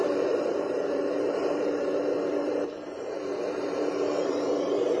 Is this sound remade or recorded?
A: remade